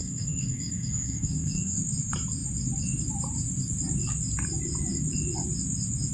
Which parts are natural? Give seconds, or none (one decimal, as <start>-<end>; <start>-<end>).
1.8-6.1